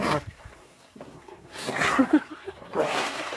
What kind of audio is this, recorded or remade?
remade